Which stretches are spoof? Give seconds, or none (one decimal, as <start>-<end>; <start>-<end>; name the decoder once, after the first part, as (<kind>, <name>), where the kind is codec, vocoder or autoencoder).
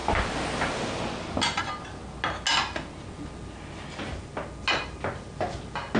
none